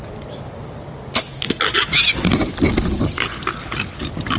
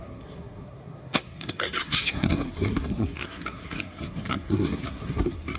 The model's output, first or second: second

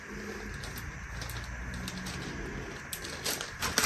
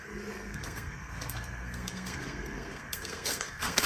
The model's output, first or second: second